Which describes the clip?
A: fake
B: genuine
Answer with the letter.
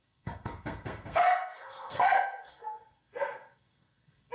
A